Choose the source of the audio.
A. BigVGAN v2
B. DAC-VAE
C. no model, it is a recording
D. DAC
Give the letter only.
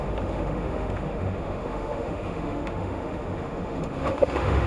B